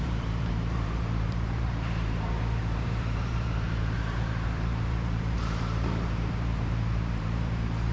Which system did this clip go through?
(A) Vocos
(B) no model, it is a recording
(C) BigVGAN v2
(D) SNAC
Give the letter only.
C